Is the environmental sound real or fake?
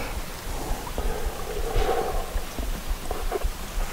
real